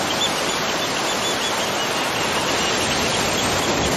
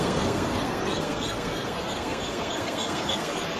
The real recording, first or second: first